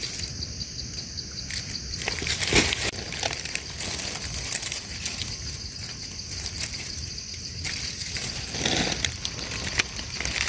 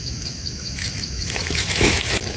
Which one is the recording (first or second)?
first